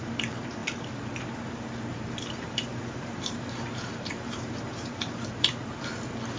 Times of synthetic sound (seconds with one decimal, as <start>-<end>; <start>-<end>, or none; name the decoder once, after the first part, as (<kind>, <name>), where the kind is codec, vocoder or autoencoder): 1.9-5.5 (vocoder, BigVGAN v2)